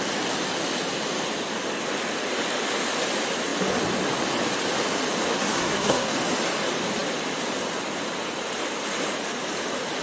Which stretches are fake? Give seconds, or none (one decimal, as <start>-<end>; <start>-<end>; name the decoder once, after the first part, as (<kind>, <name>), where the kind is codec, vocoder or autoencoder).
5.3-6.1 (codec, SNAC)